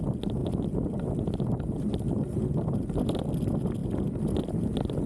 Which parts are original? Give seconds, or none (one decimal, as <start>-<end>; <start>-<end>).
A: 0.0-5.1